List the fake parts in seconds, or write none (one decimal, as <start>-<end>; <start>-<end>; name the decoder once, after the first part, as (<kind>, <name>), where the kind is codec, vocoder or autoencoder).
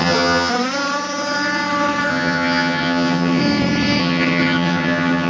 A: 0.0-0.5 (vocoder, HiFi-GAN); 2.1-3.4; 4.0-5.3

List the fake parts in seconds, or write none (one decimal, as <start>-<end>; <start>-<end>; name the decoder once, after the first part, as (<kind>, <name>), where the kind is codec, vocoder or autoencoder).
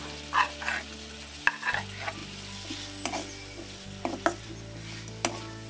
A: none